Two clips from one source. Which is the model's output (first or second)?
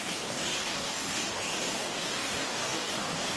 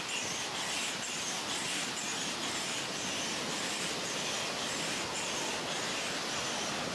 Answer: first